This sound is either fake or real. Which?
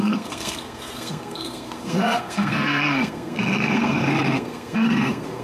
fake